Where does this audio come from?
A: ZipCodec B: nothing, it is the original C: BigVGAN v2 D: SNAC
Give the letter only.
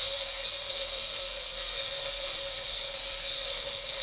D